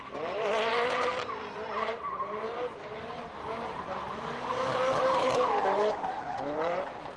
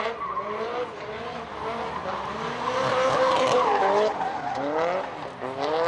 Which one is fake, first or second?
first